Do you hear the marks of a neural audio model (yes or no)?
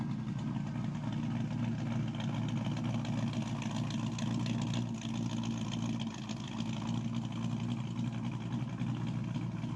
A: no